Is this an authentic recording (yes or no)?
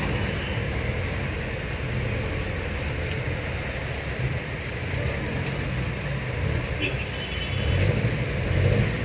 yes